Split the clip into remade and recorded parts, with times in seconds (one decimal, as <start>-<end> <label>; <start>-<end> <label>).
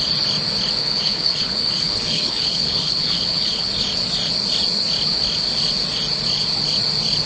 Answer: 0.0-0.8 recorded; 0.8-3.7 remade; 3.7-7.3 recorded